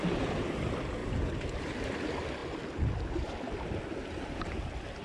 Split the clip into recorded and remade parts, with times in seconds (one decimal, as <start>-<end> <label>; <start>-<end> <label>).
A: 0.0-1.0 recorded; 1.0-1.8 remade; 1.8-5.0 recorded